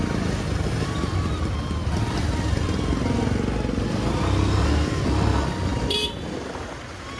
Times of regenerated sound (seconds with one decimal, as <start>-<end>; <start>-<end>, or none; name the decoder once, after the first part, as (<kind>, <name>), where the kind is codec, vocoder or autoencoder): none

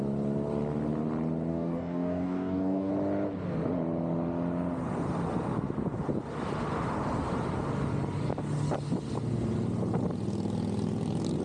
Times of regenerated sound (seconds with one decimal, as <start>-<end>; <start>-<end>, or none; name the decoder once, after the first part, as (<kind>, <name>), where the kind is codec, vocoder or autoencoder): 1.5-2.9 (codec, DAC)

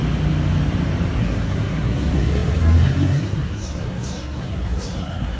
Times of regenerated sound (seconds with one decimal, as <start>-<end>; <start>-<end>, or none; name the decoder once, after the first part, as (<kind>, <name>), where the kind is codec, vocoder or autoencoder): 1.2-5.4 (codec, SNAC)

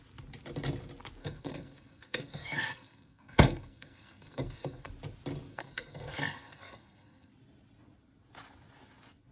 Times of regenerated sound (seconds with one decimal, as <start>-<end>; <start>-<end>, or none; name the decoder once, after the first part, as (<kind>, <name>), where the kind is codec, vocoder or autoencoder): 1.2-4.9 (codec, SNAC); 5.5-7.3